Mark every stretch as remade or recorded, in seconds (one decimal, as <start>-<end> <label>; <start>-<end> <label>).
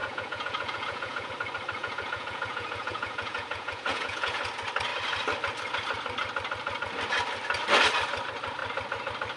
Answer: 0.0-1.3 remade; 1.3-1.8 recorded; 1.8-4.4 remade; 4.4-9.4 recorded